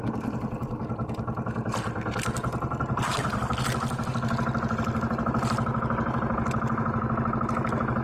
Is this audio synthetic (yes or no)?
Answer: no